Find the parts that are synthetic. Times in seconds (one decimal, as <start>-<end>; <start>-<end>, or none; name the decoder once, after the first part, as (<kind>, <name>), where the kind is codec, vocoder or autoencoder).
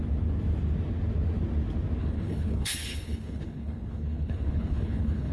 2.0-5.3 (codec, HILCodec)